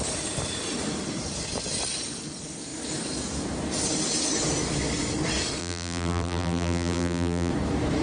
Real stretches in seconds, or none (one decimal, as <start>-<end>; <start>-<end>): 0.0-5.6; 7.5-8.0